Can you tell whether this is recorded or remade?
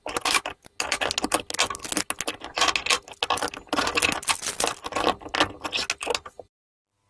recorded